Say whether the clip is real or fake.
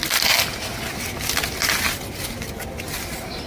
real